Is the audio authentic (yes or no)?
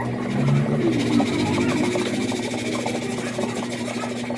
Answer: yes